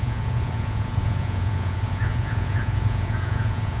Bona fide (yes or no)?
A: no